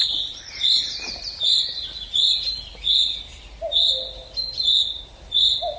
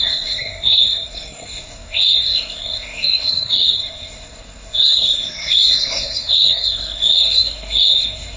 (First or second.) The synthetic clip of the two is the second